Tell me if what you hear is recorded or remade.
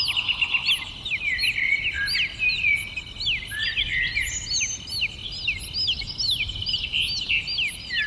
recorded